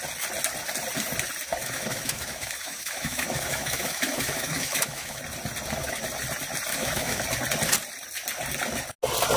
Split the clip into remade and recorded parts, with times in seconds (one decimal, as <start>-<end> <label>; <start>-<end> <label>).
0.0-1.6 recorded; 1.6-5.2 remade; 5.2-6.7 recorded; 6.7-7.2 remade; 7.2-9.4 recorded